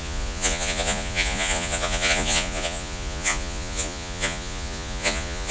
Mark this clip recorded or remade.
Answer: remade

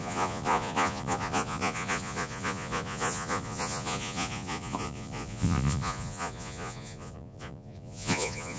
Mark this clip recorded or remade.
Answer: remade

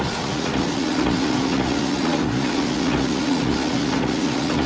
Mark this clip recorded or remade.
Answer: remade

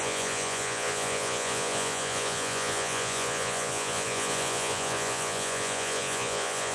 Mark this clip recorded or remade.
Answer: remade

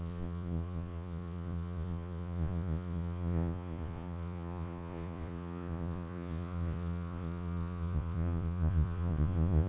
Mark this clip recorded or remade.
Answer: remade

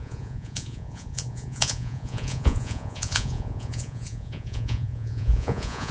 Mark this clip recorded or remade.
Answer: remade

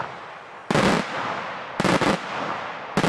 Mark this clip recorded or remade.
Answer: recorded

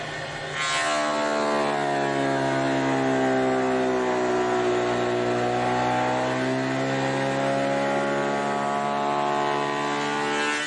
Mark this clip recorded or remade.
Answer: recorded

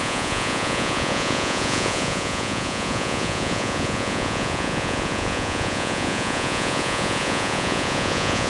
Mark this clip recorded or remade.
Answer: remade